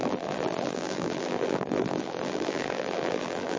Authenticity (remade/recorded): remade